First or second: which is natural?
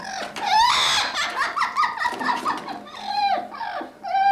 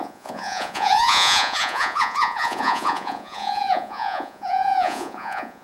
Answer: first